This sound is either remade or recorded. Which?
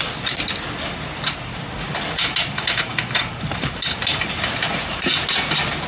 recorded